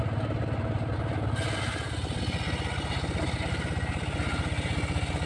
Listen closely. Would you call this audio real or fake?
real